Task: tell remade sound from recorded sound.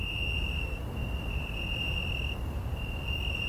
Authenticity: recorded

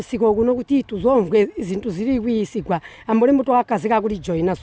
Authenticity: recorded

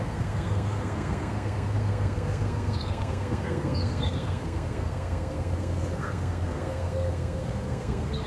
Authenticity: remade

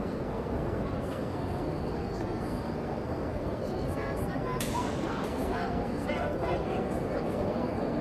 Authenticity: remade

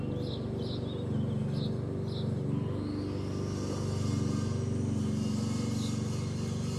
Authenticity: recorded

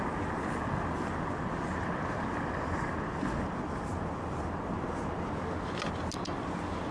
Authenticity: recorded